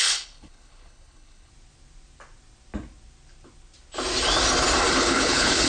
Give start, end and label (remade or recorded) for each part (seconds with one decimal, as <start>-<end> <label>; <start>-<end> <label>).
0.0-1.5 remade; 1.5-4.9 recorded; 4.9-5.7 remade